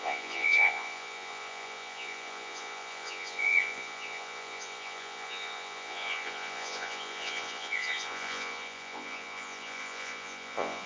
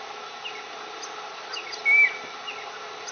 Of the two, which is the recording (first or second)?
second